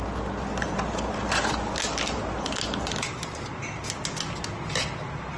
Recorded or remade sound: recorded